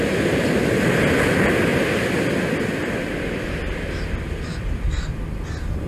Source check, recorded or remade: recorded